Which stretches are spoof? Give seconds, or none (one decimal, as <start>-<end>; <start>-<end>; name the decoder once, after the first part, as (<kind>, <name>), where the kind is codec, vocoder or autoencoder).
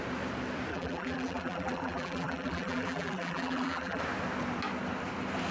0.7-4.0 (vocoder, BigVGAN v2)